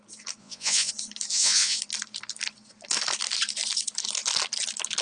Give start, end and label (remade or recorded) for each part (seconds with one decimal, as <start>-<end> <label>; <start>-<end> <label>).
0.0-0.4 recorded; 0.4-0.9 remade; 0.9-1.3 recorded; 1.3-1.8 remade; 1.8-5.0 recorded